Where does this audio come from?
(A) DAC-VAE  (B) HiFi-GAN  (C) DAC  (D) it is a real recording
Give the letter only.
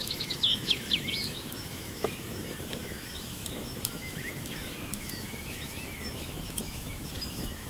A